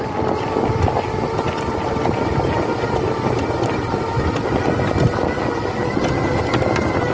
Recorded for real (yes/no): yes